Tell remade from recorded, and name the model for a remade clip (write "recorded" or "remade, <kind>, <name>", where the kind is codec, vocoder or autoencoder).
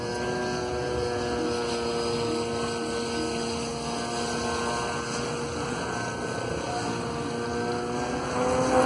recorded